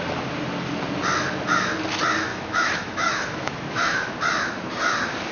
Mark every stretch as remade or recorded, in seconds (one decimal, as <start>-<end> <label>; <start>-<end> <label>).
0.0-2.3 recorded; 2.3-4.1 remade; 4.1-5.3 recorded